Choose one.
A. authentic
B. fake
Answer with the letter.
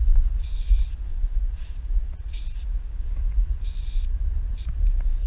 A